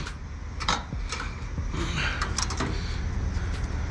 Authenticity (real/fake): real